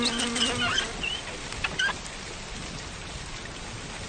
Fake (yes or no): no